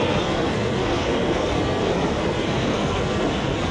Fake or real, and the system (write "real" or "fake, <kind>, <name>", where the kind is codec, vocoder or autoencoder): fake, codec, SNAC